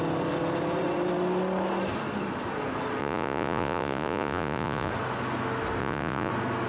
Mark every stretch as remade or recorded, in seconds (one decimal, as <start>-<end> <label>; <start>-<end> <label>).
0.0-3.0 recorded; 3.0-4.9 remade; 4.9-5.8 recorded; 5.8-6.3 remade; 6.3-6.7 recorded